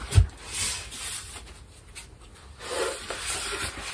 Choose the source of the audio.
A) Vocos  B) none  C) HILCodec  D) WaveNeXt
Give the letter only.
B